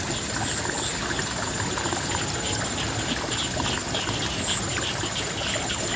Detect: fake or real real